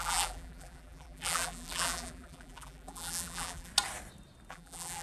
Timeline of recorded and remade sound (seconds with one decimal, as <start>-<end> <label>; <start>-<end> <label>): 0.0-3.7 remade; 3.7-4.5 recorded; 4.5-5.0 remade